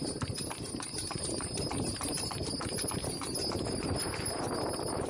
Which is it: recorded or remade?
remade